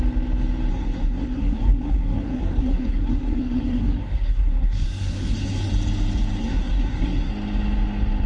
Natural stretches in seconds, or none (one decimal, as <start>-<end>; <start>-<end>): 0.0-0.7; 5.7-6.4; 7.3-8.3